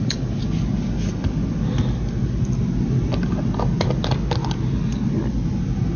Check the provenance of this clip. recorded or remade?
recorded